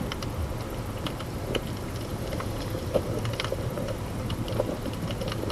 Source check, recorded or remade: recorded